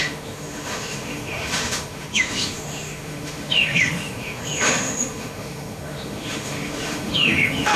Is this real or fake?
fake